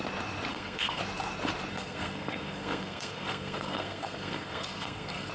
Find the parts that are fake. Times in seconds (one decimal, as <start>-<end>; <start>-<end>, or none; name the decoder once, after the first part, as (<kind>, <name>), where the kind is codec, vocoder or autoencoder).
0.5-1.0 (codec, SNAC); 1.7-5.3